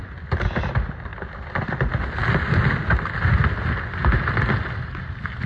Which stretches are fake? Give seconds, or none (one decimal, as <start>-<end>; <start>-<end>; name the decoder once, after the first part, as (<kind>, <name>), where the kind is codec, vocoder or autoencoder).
none